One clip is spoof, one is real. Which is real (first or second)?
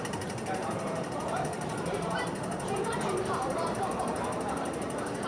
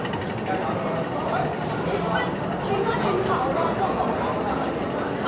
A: second